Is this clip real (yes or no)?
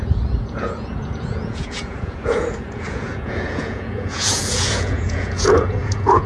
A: no